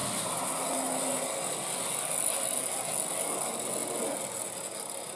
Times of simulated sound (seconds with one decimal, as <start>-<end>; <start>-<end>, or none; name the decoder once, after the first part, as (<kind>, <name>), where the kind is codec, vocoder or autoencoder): none